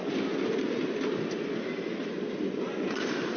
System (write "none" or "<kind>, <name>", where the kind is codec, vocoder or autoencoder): none